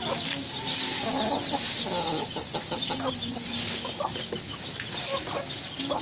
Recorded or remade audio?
recorded